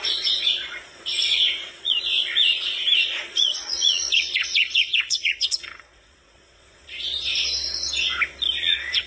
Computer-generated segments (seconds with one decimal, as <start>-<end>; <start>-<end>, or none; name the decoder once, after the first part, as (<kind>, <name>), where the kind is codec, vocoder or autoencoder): 0.0-7.3 (vocoder, Vocos); 8.6-9.1